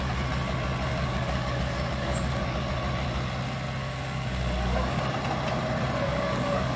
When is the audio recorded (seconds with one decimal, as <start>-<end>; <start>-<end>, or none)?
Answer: 0.0-0.9; 2.7-3.8; 5.0-6.1